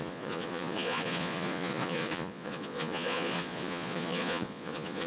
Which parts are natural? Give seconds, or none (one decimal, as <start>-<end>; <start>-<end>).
none